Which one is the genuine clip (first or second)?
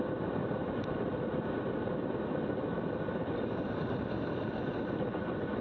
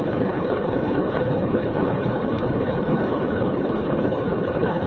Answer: first